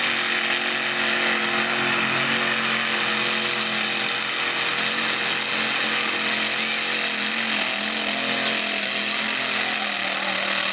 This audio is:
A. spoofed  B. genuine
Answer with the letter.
B